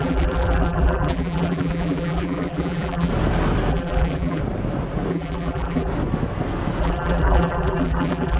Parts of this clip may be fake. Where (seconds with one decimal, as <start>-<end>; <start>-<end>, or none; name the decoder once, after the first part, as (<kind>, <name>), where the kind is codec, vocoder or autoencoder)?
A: 0.0-3.1 (vocoder, BigVGAN v2); 3.7-4.4; 5.1-5.9; 6.8-8.4